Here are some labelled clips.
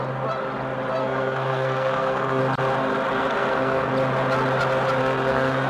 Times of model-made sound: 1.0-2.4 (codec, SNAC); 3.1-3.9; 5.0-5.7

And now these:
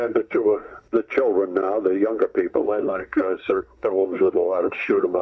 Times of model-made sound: 0.0-0.7 (codec, SNAC); 2.5-5.2

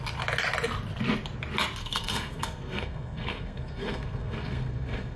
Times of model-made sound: 1.8-5.2 (codec, SNAC)

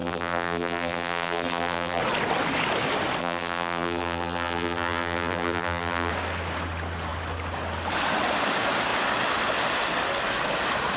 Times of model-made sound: 0.0-2.0 (vocoder, BigVGAN v2); 3.2-6.1

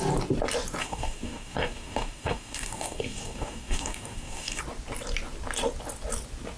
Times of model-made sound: 0.8-4.6 (codec, DAC)